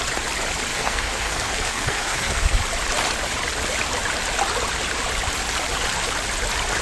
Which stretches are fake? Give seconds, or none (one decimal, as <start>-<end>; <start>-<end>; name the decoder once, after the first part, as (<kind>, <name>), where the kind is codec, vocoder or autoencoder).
0.7-2.6 (codec, SNAC)